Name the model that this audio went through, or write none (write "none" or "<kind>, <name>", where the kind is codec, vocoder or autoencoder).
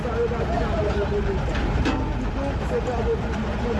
none